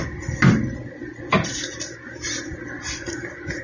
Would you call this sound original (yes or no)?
yes